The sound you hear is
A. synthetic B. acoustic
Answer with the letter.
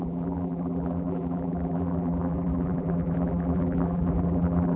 A